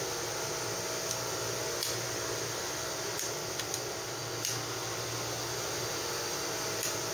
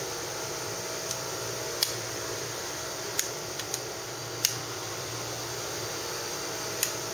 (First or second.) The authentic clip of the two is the first